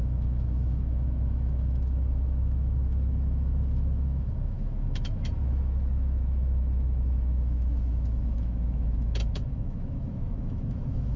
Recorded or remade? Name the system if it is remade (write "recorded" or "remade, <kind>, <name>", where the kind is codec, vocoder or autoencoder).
remade, autoencoder, DAC-VAE